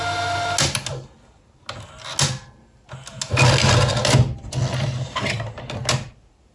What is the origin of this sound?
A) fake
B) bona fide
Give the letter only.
B